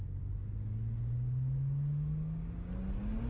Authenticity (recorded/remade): recorded